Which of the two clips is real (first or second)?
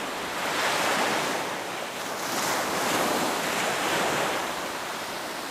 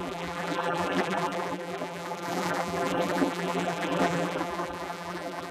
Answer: first